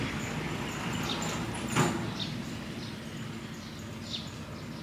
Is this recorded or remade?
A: recorded